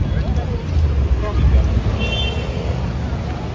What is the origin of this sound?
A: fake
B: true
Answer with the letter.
B